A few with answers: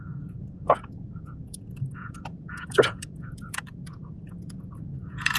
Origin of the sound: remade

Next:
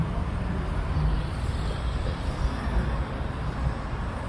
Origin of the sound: recorded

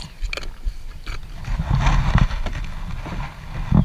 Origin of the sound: recorded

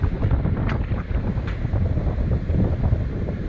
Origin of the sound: recorded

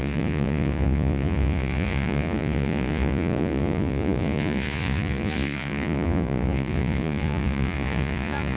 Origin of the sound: remade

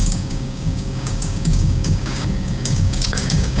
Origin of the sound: remade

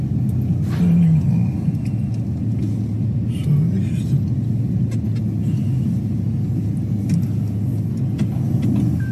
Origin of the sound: recorded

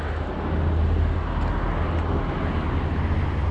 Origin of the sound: recorded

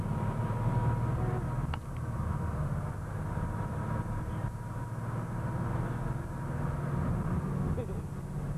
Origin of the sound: recorded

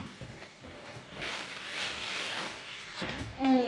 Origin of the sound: remade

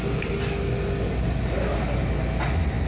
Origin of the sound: recorded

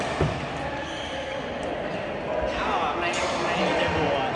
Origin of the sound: recorded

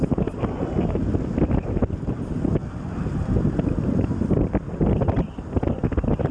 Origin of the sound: recorded